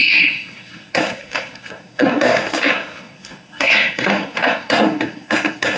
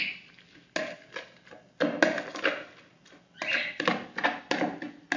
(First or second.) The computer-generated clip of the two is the first